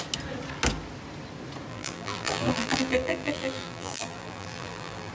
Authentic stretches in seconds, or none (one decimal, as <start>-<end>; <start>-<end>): 0.0-1.7

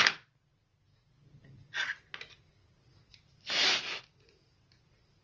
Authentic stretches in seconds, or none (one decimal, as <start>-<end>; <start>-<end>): 0.5-3.6

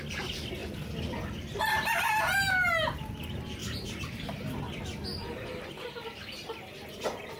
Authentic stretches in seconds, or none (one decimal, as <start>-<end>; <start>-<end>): 0.0-3.6; 4.6-5.2